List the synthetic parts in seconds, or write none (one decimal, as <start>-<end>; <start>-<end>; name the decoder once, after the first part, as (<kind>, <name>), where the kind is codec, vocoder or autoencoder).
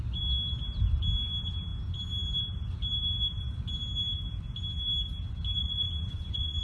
5.6-6.6 (vocoder, Vocos)